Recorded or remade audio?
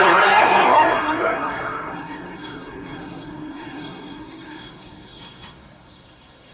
remade